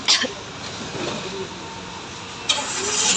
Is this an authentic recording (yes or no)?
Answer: yes